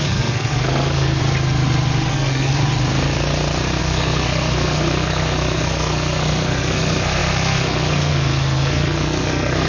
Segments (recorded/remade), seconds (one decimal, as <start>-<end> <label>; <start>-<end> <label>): 0.0-1.2 remade; 1.2-2.1 recorded; 2.1-2.5 remade; 2.5-3.8 recorded; 3.8-9.7 remade